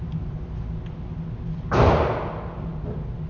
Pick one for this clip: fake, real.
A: real